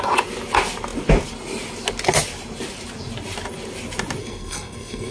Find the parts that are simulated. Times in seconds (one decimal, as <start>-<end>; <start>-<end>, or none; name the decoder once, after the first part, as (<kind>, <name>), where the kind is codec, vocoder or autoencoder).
4.2-5.1 (codec, SNAC)